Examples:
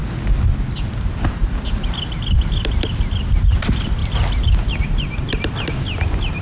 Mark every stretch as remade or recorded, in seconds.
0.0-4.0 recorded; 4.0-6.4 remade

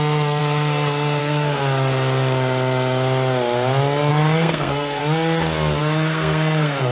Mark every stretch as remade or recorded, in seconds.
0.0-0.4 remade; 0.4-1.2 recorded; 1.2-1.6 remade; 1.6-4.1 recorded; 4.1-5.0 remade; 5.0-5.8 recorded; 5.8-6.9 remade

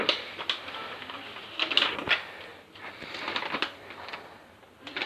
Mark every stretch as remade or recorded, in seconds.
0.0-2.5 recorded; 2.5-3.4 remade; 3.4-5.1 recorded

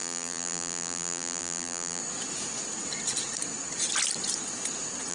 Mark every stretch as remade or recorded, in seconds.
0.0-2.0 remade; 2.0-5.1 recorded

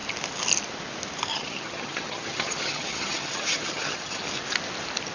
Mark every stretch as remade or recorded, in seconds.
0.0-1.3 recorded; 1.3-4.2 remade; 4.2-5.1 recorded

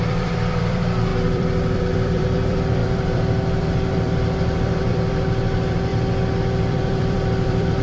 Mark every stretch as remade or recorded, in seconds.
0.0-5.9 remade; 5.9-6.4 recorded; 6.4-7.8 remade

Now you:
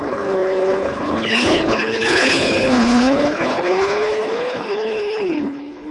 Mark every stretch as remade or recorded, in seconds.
0.0-5.9 remade